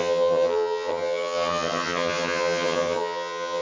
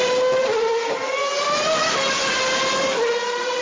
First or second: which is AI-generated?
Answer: first